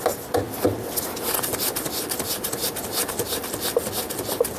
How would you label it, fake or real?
real